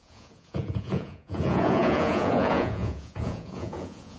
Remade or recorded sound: remade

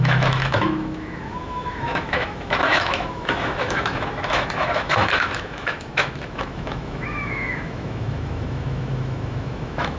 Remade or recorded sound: remade